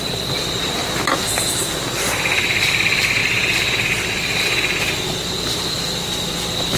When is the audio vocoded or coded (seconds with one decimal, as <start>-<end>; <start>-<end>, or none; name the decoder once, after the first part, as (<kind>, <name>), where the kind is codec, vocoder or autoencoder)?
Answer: none